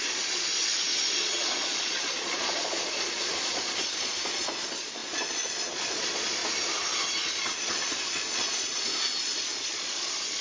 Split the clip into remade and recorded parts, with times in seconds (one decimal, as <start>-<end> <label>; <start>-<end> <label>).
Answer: 0.0-6.4 remade; 6.4-7.3 recorded; 7.3-10.4 remade